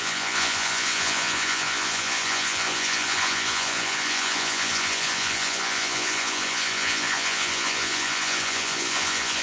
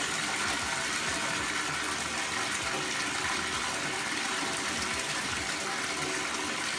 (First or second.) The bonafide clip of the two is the second